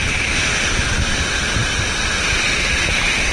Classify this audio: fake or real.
real